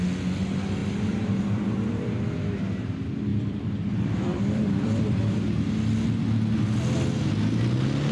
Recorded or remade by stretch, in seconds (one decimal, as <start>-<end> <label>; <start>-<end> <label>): 0.0-0.8 recorded; 0.8-2.5 remade; 2.5-3.3 recorded; 3.3-5.3 remade; 5.3-8.1 recorded